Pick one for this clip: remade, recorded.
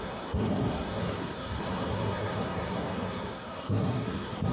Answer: remade